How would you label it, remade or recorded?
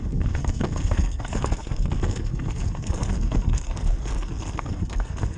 remade